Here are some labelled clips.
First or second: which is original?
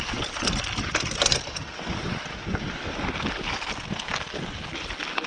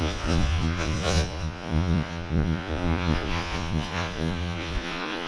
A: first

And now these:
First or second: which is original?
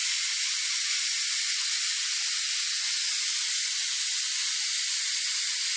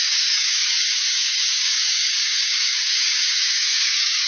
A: first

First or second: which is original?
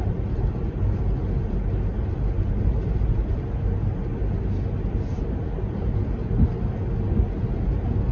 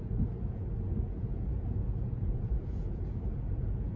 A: first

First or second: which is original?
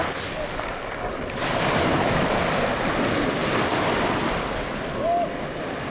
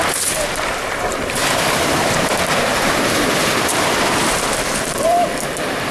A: first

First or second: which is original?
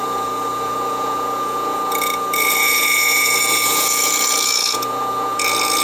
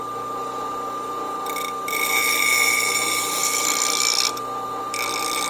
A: second